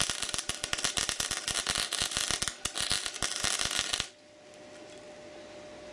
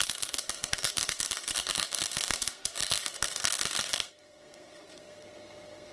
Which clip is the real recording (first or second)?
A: first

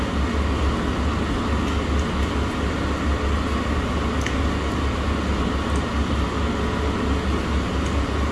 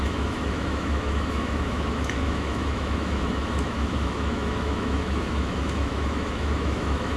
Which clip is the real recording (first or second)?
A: first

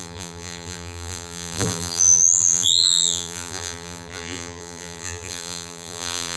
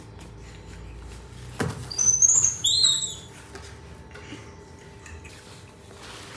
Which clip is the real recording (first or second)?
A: second